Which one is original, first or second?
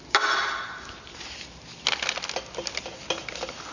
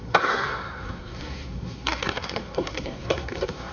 first